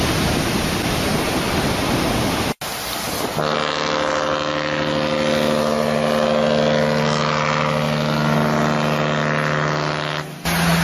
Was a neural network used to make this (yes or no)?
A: no